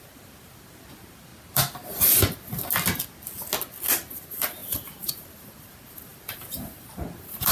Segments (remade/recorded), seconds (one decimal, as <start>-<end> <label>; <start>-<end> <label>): 0.0-1.3 remade; 1.3-4.1 recorded; 4.1-7.5 remade

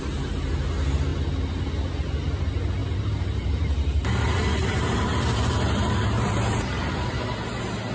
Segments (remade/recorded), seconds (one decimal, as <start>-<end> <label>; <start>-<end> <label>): 0.0-2.8 recorded; 2.8-6.9 remade; 6.9-7.9 recorded